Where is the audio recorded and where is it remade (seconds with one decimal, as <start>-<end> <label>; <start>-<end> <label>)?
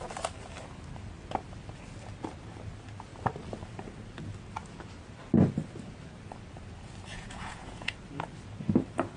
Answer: 0.0-7.1 recorded; 7.1-7.9 remade; 7.9-9.2 recorded